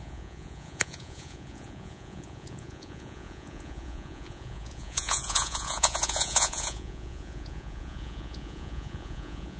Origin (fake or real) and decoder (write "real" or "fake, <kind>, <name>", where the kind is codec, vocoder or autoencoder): fake, vocoder, Vocos